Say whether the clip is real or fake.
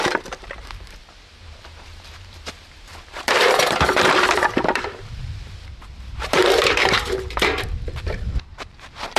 fake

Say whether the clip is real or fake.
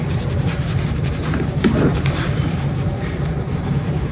fake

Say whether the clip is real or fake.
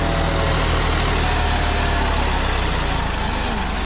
real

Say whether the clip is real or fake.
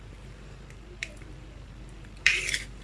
fake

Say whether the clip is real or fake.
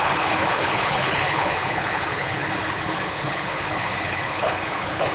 fake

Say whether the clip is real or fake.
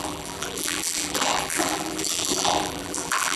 fake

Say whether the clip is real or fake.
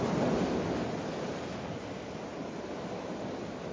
real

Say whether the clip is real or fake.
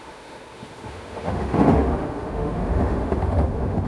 fake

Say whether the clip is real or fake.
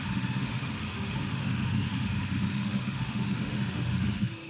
fake